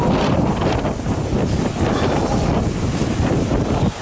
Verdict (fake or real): real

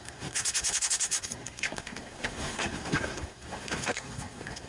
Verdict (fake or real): fake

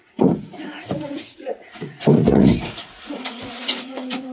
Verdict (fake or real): fake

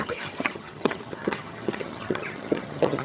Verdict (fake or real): fake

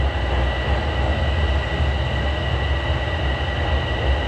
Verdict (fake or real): real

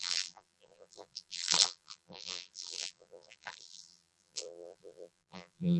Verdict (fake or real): fake